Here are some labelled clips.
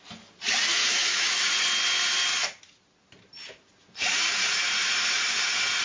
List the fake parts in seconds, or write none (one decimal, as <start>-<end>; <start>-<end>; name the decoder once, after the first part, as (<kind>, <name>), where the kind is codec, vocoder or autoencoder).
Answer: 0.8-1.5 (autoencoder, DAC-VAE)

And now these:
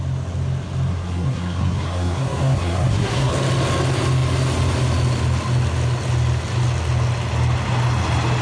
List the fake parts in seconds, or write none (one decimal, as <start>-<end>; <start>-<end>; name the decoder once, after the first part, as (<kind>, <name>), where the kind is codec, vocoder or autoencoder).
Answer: 0.9-3.3 (codec, SNAC)

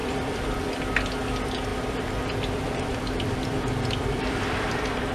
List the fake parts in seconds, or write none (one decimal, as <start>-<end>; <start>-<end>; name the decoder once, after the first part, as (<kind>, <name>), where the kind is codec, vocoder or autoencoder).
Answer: 0.0-0.8 (vocoder, BigVGAN v2); 1.7-5.1

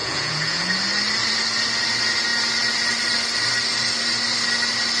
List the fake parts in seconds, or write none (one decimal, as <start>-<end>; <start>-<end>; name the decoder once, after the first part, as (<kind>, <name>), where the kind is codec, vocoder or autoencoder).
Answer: 0.0-0.6 (vocoder, Vocos)

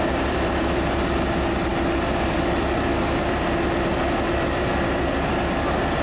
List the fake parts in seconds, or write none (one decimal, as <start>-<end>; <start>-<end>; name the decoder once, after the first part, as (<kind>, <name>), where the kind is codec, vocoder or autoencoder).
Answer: none

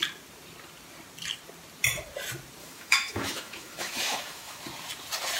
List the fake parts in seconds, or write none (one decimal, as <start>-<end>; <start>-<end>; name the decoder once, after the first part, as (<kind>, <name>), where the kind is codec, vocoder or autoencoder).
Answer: 2.6-4.6 (autoencoder, DAC-VAE)